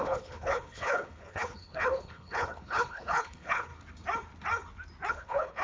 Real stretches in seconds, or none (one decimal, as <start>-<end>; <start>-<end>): 3.7-5.1